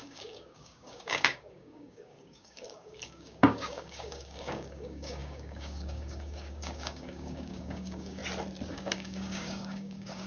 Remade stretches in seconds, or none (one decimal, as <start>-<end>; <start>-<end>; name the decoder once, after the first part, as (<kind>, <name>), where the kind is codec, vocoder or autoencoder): 0.0-8.2 (codec, DAC); 8.7-10.3